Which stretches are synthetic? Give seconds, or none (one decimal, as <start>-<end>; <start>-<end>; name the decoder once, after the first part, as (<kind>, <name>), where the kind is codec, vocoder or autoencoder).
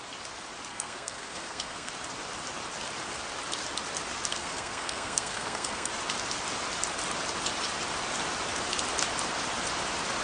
0.7-1.9 (codec, SNAC); 4.3-5.9